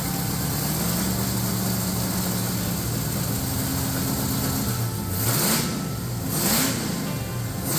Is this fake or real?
real